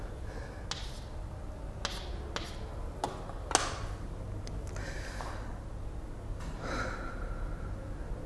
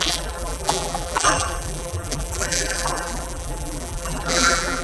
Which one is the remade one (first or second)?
second